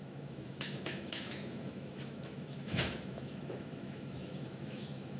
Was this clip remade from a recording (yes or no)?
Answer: yes